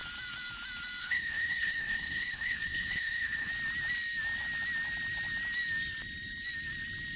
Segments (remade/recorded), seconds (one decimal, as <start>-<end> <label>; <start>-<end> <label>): 0.0-1.0 recorded; 1.0-3.5 remade; 3.5-7.2 recorded